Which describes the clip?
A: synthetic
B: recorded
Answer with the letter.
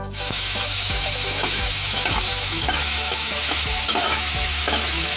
A